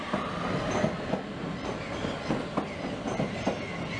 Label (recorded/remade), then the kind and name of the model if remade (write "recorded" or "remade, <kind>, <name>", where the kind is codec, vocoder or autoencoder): recorded